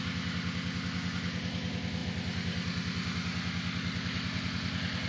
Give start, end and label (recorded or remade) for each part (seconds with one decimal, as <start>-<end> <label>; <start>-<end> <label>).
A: 0.0-5.1 recorded